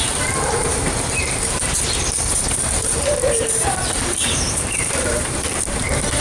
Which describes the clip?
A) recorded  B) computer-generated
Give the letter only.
B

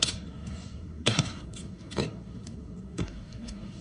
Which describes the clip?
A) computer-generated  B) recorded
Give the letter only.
A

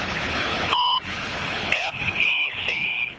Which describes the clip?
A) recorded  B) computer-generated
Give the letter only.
B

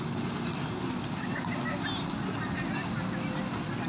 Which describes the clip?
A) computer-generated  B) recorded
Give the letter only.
B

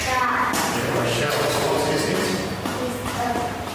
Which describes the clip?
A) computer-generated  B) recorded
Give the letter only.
A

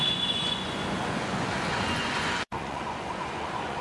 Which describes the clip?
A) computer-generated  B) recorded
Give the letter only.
A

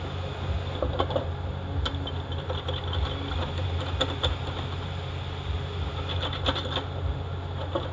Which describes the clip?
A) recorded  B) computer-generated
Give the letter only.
A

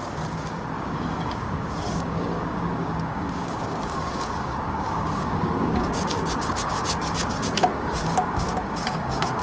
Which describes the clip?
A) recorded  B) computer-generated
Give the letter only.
B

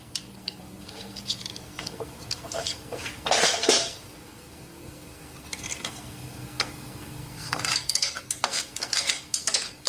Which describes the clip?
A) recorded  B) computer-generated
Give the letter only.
B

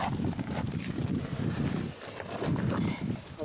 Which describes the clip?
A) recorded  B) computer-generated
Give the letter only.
A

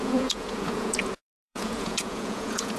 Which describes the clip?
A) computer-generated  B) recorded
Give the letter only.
A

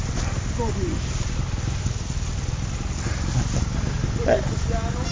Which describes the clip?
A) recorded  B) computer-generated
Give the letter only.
A